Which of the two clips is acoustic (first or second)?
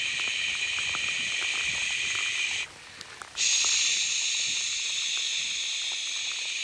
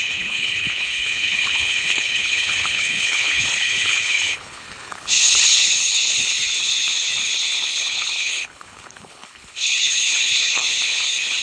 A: first